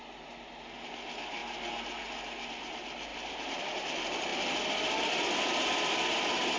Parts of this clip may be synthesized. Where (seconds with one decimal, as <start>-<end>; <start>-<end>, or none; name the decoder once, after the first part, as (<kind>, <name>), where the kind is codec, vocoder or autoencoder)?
3.1-3.6 (vocoder, BigVGAN v2)